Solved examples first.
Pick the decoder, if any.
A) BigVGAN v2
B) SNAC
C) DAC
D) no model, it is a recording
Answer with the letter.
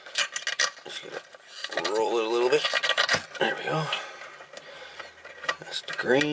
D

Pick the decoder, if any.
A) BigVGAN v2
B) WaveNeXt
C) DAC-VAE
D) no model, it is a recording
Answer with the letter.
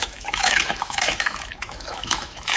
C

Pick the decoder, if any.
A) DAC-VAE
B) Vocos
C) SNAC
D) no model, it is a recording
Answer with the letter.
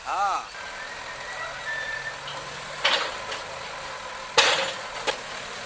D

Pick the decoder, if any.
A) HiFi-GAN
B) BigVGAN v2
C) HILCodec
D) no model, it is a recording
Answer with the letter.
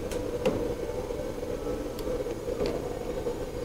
D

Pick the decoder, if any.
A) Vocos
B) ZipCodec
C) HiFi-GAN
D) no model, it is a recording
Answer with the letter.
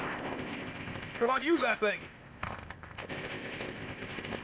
B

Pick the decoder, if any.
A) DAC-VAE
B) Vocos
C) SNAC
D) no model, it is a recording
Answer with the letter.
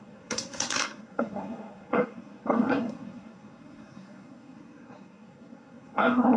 C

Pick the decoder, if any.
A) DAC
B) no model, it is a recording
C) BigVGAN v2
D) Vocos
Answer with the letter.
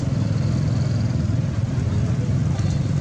B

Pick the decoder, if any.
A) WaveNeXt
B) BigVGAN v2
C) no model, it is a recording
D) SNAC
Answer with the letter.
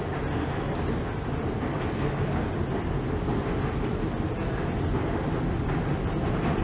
C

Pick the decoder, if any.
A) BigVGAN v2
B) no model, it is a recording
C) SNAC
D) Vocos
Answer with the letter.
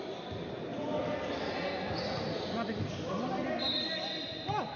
B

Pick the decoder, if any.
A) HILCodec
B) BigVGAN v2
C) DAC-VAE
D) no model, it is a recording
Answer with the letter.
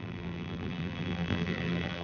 B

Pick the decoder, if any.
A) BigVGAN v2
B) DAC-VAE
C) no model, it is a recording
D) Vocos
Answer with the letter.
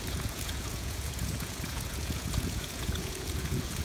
D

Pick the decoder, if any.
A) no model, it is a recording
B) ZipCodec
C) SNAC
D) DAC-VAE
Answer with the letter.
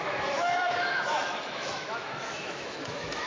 D